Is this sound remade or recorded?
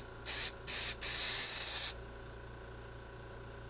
recorded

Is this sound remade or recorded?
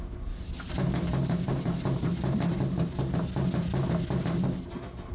recorded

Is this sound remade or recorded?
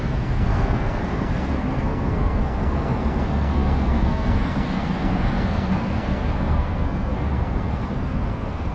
remade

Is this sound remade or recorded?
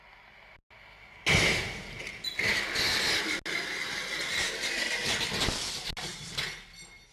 recorded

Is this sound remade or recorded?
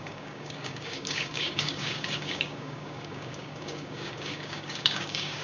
remade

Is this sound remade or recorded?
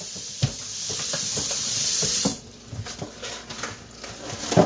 recorded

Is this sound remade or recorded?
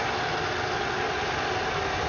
recorded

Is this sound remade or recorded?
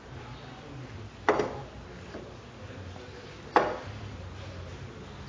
recorded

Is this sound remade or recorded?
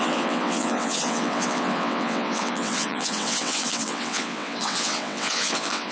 remade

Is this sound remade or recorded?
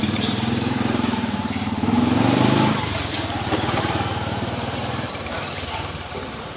remade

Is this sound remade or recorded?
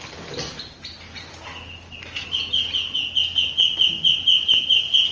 recorded